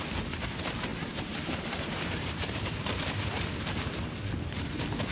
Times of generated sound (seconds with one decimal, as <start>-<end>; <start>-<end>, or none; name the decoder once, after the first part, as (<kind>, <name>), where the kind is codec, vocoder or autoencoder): 0.9-4.0 (vocoder, BigVGAN v2)